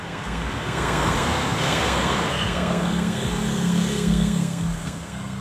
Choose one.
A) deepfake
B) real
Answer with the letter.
A